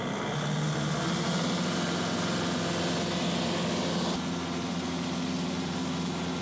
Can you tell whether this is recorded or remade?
recorded